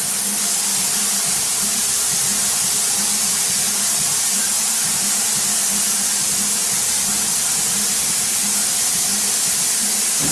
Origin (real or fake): real